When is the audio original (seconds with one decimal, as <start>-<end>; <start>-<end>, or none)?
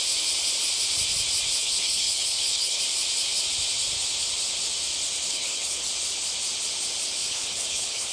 0.0-1.6; 2.8-5.3; 5.9-7.2